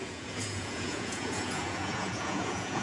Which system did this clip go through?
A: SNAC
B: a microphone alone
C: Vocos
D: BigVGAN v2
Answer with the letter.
C